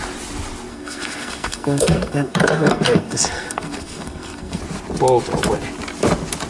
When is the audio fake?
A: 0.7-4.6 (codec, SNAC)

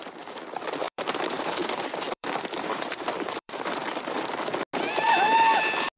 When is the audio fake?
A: 0.8-4.4 (vocoder, BigVGAN v2)

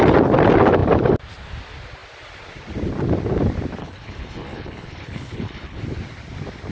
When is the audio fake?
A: 3.8-5.8 (codec, HILCodec)

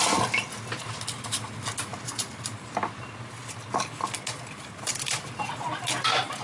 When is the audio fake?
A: 1.9-3.3 (vocoder, BigVGAN v2); 4.6-5.5

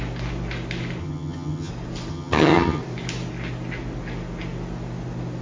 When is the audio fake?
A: 1.0-1.7 (vocoder, HiFi-GAN); 2.1-2.8